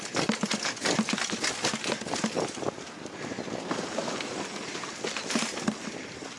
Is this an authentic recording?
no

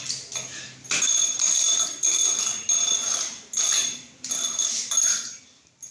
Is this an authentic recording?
no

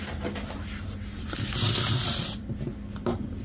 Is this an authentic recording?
yes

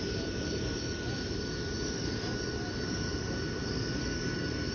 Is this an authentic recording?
yes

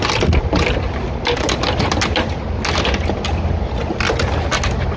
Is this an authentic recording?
yes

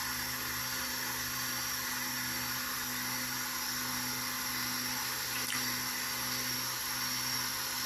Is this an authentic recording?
yes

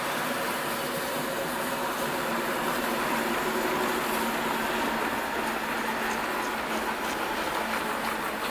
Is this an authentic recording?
yes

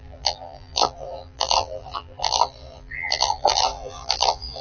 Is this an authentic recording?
no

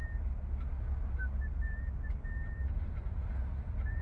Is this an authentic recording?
yes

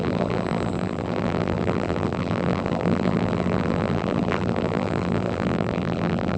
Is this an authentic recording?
no